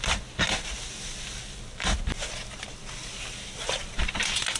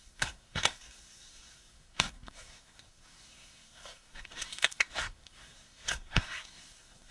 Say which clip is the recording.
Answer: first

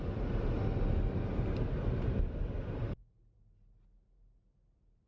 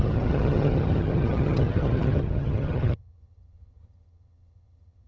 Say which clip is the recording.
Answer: first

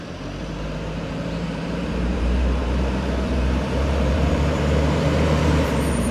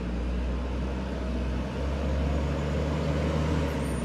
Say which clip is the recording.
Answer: second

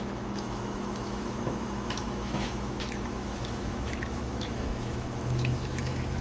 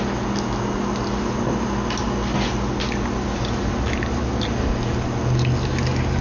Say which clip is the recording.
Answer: second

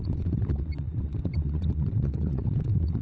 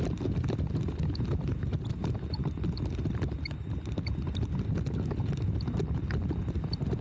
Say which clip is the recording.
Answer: second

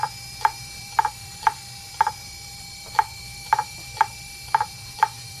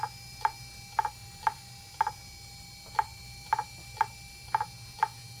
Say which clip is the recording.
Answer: second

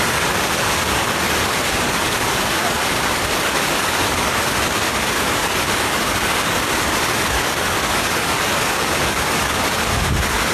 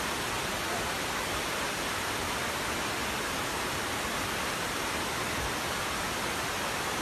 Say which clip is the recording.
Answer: second